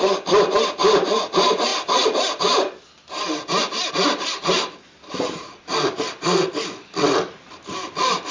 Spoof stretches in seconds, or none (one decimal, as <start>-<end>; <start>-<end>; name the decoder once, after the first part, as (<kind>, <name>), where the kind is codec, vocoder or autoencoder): none